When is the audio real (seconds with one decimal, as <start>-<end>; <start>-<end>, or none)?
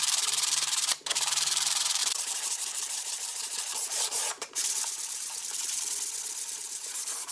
5.9-6.4